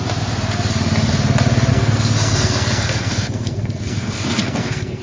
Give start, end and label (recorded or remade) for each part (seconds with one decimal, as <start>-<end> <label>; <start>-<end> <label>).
0.0-1.7 recorded; 1.7-5.0 remade